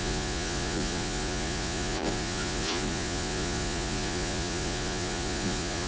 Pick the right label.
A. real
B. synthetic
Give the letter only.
B